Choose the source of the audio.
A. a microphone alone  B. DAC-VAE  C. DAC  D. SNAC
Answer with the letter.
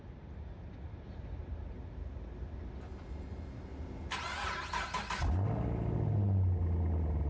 A